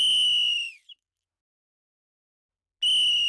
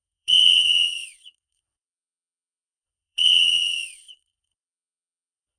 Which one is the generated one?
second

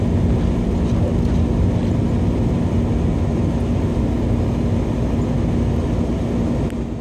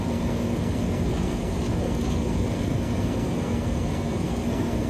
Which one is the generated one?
second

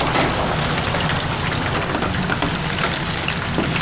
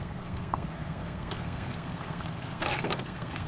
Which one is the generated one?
second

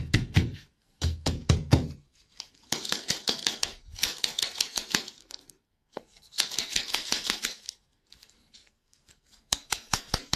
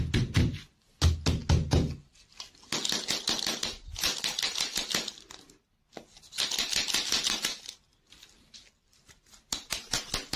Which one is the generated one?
first